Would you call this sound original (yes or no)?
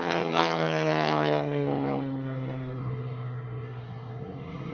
no